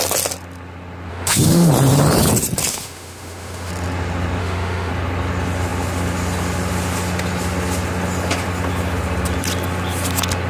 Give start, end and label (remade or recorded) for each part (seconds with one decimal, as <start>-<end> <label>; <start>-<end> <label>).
0.0-1.1 recorded; 1.1-1.7 remade; 1.7-2.7 recorded; 2.7-3.7 remade; 3.7-4.4 recorded; 4.4-4.9 remade; 4.9-10.5 recorded